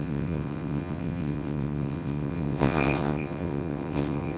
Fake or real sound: fake